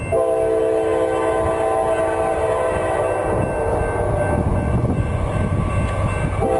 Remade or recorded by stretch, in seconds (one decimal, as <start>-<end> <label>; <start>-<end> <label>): 0.0-4.5 recorded; 4.5-5.3 remade; 5.3-6.6 recorded